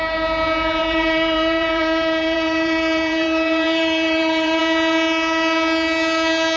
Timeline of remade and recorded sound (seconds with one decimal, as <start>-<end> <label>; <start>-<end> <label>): 0.0-0.8 recorded; 0.8-4.6 remade; 4.6-6.6 recorded